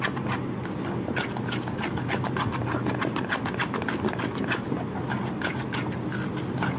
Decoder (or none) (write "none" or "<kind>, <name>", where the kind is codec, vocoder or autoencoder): none